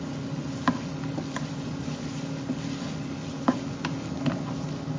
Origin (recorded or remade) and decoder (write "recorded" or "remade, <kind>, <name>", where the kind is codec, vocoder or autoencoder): recorded